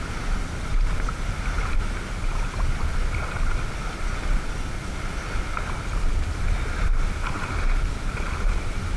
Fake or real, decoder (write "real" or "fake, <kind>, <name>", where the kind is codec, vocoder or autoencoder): real